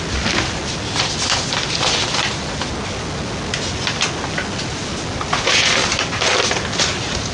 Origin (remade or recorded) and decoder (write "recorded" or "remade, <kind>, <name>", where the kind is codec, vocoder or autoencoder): recorded